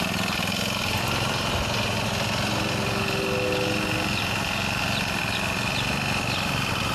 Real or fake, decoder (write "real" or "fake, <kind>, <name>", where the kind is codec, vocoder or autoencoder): real